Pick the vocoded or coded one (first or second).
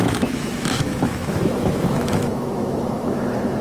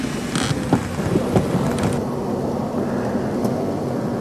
first